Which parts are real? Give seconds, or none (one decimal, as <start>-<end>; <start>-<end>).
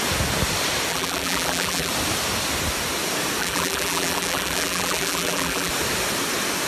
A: 0.0-0.9; 1.9-3.4; 5.7-6.7